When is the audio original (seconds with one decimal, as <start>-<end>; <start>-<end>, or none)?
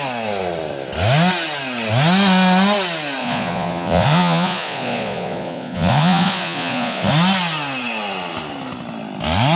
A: 0.0-3.2; 7.1-9.6